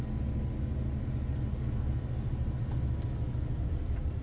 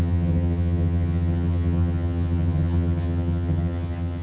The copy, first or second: second